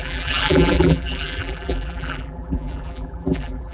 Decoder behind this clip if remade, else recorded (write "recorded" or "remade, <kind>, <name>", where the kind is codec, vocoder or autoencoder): remade, vocoder, BigVGAN v2